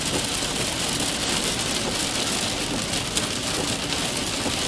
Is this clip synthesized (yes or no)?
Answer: no